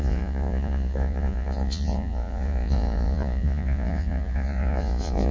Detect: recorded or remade remade